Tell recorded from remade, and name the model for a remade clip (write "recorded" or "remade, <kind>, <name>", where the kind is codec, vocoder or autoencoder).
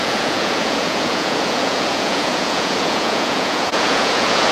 remade, vocoder, Vocos